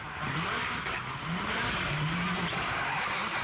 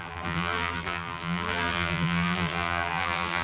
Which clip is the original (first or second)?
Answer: first